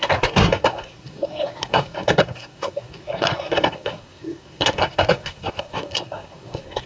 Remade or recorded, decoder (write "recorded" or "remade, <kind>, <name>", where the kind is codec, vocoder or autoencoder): remade, codec, SNAC